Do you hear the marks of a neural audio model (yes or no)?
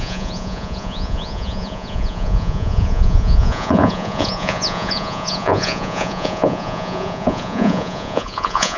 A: yes